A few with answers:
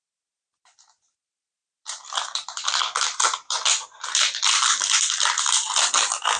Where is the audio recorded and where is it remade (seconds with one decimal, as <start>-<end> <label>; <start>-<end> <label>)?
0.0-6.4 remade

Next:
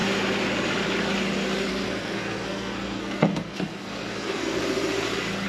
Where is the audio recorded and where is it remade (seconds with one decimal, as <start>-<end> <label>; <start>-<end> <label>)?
0.0-1.7 recorded; 1.7-4.6 remade; 4.6-5.5 recorded

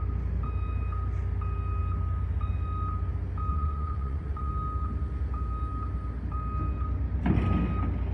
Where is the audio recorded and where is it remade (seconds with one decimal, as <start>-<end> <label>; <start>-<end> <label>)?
0.0-3.5 recorded; 3.5-4.5 remade; 4.5-8.1 recorded